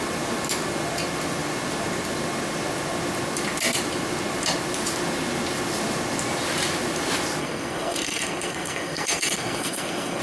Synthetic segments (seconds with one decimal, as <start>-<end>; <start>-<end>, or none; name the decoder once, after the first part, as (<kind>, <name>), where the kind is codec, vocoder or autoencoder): 7.4-10.2 (codec, SNAC)